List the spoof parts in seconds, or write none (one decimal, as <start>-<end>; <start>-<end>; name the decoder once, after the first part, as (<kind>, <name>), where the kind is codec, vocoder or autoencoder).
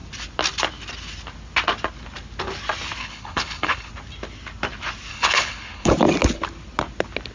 3.0-3.9 (codec, HILCodec); 5.1-5.9